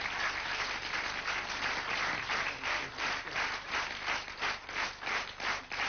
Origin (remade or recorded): recorded